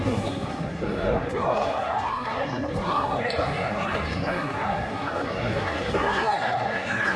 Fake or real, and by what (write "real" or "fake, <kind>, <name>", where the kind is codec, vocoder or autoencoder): fake, codec, SNAC